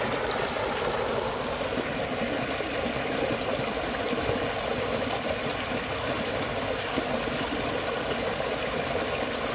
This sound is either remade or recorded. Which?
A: recorded